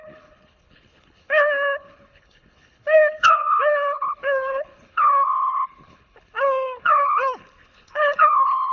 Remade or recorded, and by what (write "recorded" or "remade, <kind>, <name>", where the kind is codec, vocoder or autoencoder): remade, codec, HILCodec